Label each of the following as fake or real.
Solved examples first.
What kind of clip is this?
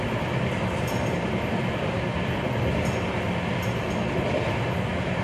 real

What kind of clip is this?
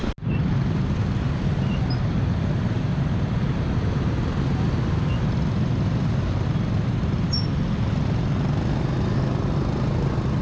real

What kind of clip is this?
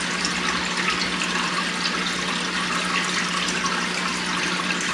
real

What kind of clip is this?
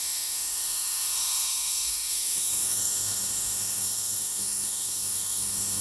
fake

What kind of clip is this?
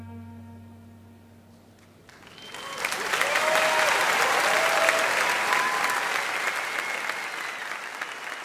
real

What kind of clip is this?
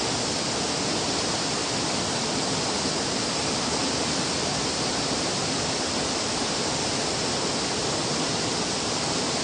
fake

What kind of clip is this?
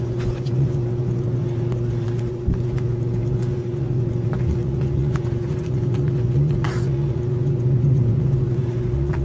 fake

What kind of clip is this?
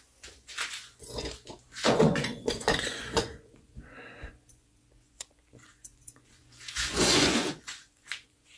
fake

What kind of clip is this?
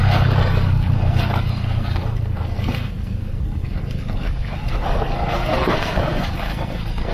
fake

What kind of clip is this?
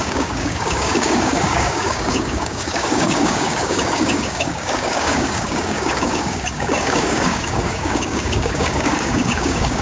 fake